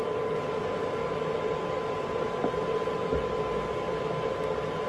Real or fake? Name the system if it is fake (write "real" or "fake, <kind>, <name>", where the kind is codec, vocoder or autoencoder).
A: real